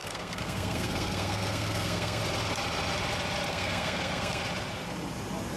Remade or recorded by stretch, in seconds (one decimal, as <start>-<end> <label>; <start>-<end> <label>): 0.0-2.2 remade; 2.2-3.5 recorded; 3.5-4.4 remade; 4.4-5.6 recorded